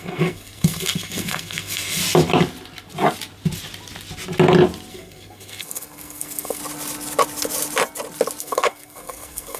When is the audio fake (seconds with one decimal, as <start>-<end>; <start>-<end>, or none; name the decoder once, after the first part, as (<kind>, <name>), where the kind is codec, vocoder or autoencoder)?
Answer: 0.0-2.0 (codec, SNAC); 4.9-6.6; 8.4-9.6